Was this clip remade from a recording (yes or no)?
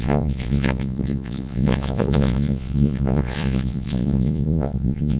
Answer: yes